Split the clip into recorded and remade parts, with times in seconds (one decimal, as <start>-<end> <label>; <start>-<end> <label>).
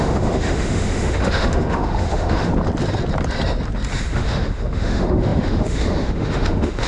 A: 0.0-2.5 remade; 2.5-4.0 recorded; 4.0-6.9 remade